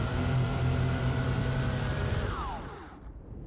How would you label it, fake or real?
fake